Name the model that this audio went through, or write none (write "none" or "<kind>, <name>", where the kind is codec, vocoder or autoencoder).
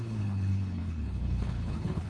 codec, HILCodec